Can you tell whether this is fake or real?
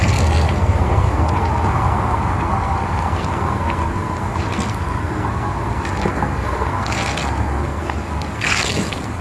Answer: fake